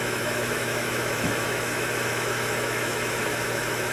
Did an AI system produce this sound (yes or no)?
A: yes